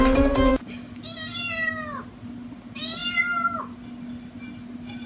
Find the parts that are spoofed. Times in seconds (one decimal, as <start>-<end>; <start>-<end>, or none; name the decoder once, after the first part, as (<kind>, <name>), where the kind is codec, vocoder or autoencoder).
none